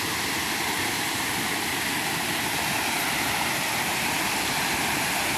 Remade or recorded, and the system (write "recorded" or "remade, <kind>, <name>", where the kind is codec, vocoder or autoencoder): recorded